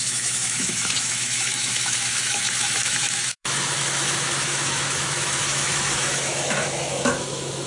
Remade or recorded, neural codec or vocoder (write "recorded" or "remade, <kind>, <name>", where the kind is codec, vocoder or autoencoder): remade, autoencoder, DAC-VAE